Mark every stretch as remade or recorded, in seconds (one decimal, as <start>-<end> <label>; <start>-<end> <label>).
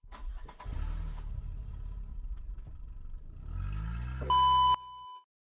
0.0-0.7 remade; 0.7-1.3 recorded; 1.3-2.1 remade; 2.1-5.5 recorded